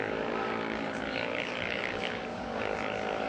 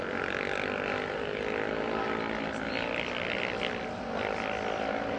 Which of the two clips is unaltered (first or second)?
second